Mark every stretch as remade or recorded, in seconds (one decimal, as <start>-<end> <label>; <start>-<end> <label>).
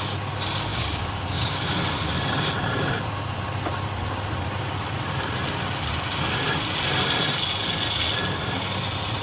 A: 0.0-0.7 recorded; 0.7-1.7 remade; 1.7-9.2 recorded